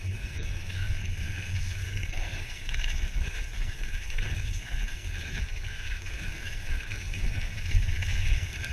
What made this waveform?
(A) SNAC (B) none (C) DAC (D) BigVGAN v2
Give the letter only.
A